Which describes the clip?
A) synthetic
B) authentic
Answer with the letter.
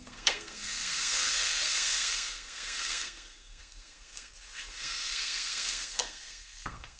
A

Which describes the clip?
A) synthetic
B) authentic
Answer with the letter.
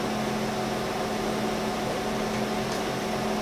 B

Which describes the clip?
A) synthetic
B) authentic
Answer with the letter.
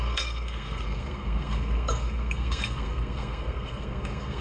A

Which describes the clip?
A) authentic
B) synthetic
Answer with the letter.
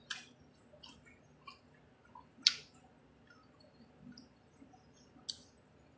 A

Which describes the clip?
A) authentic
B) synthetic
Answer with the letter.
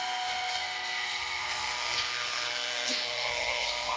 B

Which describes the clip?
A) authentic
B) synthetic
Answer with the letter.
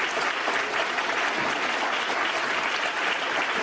A